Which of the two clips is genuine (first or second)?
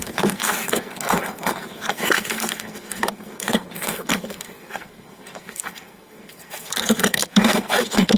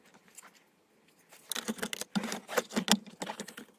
second